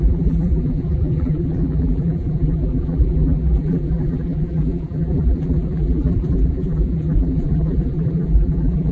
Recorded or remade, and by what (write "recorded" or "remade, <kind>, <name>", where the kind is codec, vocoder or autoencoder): remade, vocoder, BigVGAN v2